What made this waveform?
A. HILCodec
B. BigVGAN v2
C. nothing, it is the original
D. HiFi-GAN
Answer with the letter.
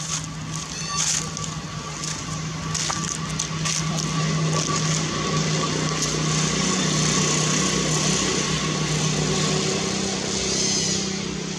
C